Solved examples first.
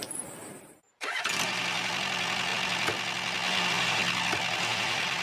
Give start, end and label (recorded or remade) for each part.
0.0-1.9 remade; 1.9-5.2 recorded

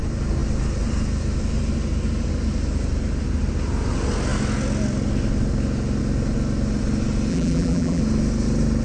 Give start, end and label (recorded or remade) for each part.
0.0-7.3 recorded; 7.3-8.0 remade; 8.0-8.8 recorded

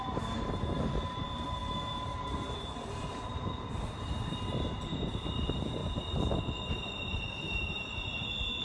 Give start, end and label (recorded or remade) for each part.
0.0-5.8 remade; 5.8-6.6 recorded; 6.6-8.6 remade

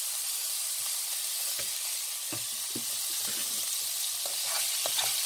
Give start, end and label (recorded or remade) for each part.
0.0-0.4 recorded; 0.4-1.4 remade; 1.4-5.3 recorded

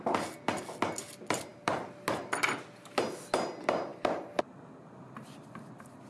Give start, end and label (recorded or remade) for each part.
0.0-6.1 recorded